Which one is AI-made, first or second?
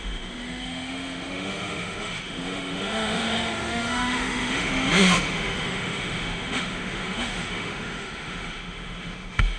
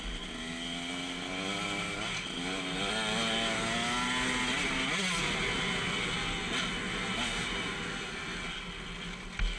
first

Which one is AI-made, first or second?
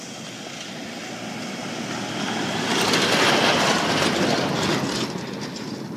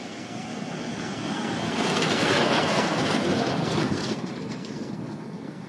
second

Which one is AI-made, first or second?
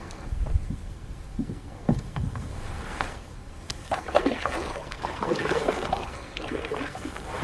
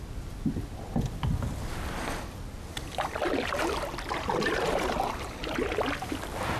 first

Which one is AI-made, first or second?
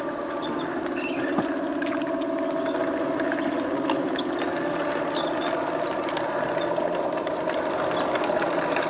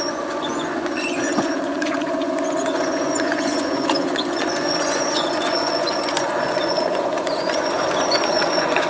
second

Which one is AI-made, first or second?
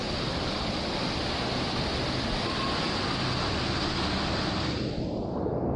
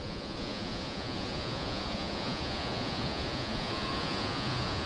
second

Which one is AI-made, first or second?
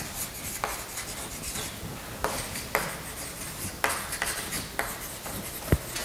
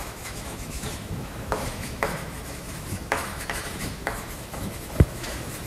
second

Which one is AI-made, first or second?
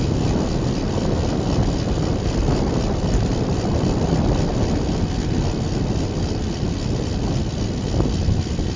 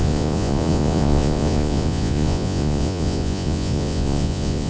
second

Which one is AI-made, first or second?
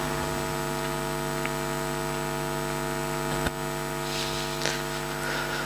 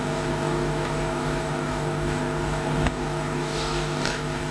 second